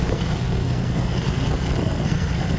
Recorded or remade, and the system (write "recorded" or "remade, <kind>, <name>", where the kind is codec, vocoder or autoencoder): remade, codec, SNAC